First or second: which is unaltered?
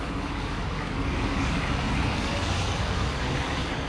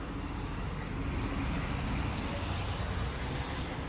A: second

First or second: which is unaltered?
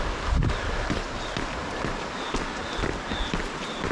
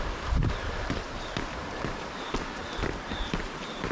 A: first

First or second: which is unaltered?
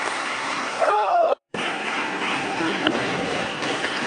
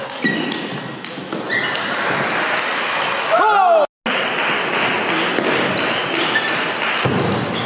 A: second